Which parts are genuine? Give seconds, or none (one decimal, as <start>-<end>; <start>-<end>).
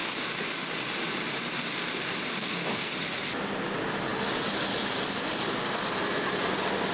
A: 0.0-2.4; 2.9-6.9